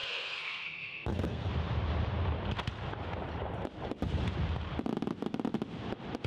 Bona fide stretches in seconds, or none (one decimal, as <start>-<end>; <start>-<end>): 1.5-6.3